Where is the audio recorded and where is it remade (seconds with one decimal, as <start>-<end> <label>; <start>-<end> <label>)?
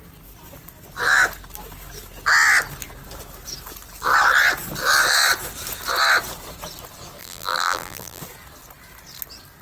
0.0-7.2 recorded; 7.2-8.2 remade; 8.2-9.6 recorded